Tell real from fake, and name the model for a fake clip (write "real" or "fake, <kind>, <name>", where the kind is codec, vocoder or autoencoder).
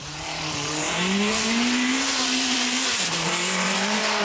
fake, vocoder, BigVGAN v2